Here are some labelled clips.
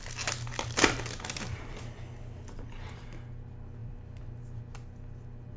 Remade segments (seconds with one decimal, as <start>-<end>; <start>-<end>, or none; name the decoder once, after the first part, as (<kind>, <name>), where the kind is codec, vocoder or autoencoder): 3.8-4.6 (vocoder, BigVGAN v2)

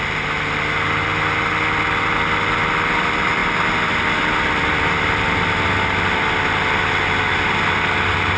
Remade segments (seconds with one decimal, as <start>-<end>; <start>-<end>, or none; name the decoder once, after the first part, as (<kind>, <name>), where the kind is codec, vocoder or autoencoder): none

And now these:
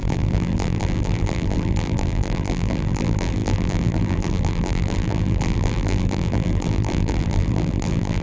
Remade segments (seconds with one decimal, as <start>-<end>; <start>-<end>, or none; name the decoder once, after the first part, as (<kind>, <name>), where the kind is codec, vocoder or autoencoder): 0.0-8.2 (vocoder, BigVGAN v2)

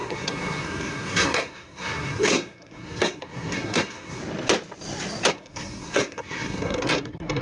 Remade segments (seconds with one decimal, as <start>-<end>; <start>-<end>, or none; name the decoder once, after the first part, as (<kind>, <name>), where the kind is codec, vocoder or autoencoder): 0.0-4.2 (codec, SNAC); 5.3-7.4